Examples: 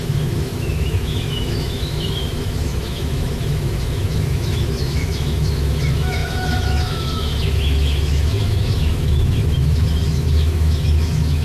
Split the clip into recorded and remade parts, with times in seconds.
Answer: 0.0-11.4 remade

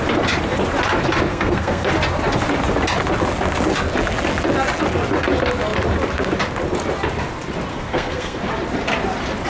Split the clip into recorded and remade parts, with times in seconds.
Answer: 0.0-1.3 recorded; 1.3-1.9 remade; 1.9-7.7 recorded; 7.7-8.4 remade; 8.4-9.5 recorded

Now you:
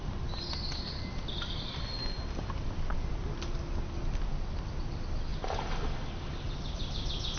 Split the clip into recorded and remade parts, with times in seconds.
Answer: 0.0-7.4 recorded